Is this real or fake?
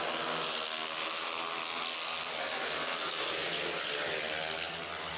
real